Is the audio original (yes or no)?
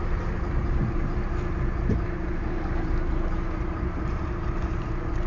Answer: yes